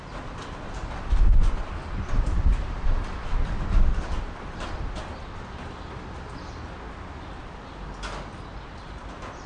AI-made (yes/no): no